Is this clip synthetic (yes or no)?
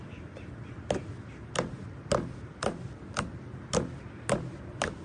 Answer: no